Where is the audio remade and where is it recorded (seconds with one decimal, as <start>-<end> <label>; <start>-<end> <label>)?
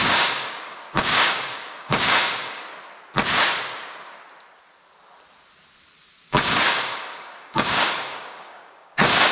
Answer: 0.0-2.7 remade; 2.7-6.3 recorded; 6.3-9.3 remade